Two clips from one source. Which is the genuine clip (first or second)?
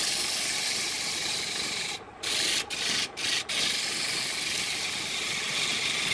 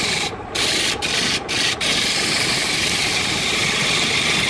first